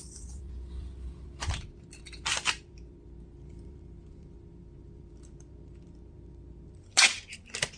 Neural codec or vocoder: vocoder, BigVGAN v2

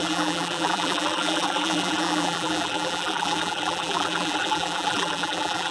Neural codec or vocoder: vocoder, BigVGAN v2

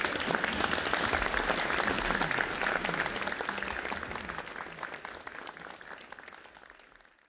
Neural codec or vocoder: none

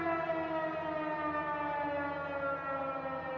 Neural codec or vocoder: none